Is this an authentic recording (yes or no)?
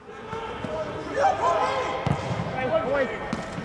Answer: yes